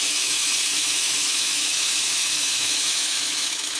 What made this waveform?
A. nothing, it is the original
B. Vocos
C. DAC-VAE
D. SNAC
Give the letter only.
C